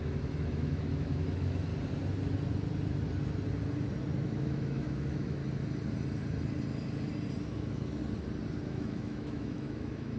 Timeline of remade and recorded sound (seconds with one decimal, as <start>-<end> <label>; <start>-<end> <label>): 0.0-1.7 remade; 1.7-4.2 recorded; 4.2-5.4 remade; 5.4-7.4 recorded; 7.4-8.0 remade; 8.0-8.6 recorded; 8.6-10.2 remade